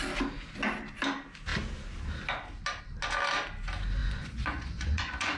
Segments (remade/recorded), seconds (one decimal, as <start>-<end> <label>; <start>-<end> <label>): 0.0-4.0 recorded; 4.0-5.4 remade